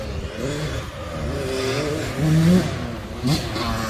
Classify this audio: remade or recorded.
recorded